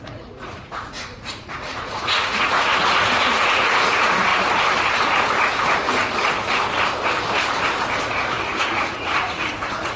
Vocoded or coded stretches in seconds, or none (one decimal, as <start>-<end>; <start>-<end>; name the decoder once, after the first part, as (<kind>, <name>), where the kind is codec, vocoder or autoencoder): 0.0-4.3 (vocoder, Vocos); 8.0-10.0